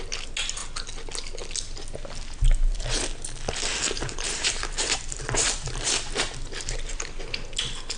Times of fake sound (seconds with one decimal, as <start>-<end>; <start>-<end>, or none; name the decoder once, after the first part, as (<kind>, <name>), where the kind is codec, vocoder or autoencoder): 3.7-5.9 (vocoder, BigVGAN v2)